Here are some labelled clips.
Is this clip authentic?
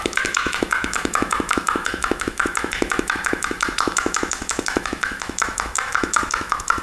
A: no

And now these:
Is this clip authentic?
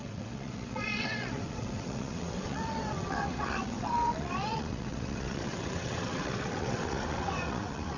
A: no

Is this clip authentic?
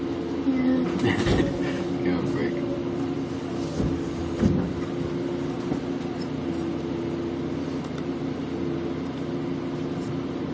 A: yes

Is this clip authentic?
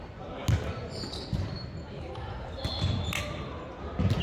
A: yes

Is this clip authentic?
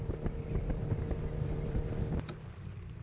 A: no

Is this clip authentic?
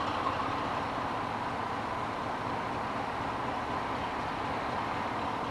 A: yes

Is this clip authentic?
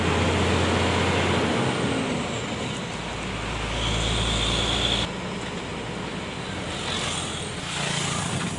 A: yes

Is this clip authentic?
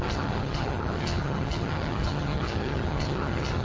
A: no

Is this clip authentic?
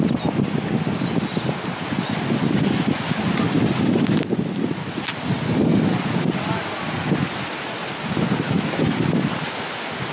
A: yes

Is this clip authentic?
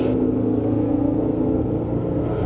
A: no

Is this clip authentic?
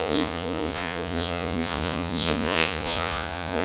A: no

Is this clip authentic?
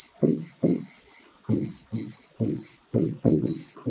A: no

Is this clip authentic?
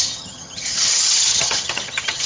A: no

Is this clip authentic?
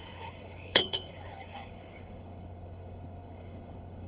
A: no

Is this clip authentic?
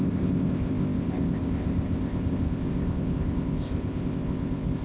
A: no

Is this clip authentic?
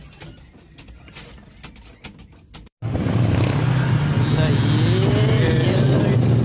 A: yes